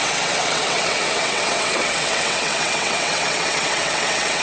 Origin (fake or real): fake